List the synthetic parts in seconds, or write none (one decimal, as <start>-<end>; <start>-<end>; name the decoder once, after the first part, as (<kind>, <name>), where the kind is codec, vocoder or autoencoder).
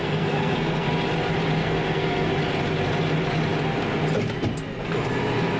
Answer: 0.0-0.9 (codec, SNAC); 1.6-2.3